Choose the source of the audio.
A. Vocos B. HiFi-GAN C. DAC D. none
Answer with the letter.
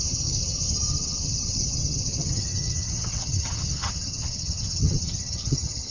B